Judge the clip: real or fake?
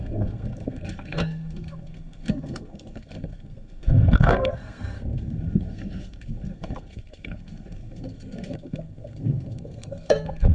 fake